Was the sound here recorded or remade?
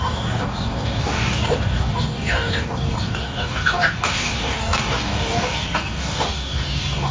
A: remade